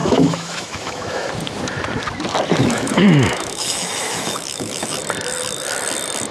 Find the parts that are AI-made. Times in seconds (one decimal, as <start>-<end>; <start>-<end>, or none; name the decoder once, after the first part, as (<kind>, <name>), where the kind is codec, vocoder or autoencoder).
0.0-1.3 (autoencoder, DAC-VAE); 2.6-5.0